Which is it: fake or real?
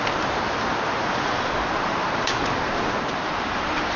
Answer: fake